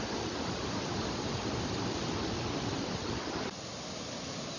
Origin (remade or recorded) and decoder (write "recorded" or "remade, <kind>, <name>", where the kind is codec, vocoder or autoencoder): recorded